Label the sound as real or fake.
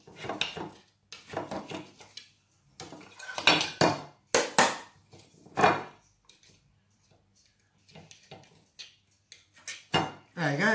real